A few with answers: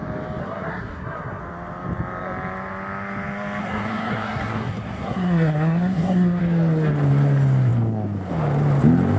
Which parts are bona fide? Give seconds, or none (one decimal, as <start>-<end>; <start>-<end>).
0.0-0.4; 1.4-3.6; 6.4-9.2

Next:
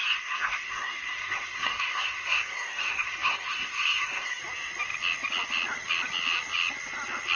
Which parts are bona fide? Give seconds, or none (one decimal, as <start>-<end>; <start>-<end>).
4.4-7.4

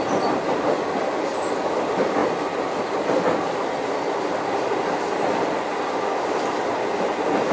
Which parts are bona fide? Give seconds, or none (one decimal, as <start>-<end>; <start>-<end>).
0.0-7.5

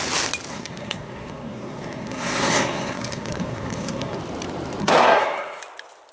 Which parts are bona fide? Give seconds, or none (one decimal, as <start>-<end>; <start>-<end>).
0.0-0.5; 4.2-4.8; 5.6-6.1

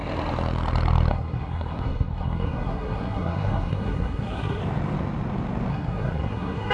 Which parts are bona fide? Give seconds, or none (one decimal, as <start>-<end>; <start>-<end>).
0.0-1.1; 4.6-5.7

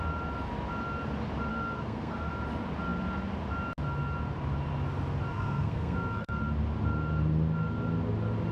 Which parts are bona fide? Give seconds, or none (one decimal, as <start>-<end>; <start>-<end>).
0.0-1.5; 2.3-5.3; 6.4-8.5

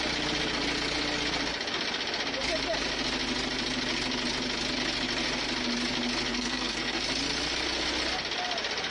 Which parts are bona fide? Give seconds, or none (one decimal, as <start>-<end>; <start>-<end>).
0.0-6.3; 7.0-8.9